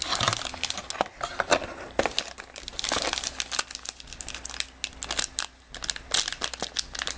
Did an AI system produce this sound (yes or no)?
no